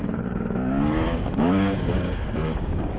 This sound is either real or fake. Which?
fake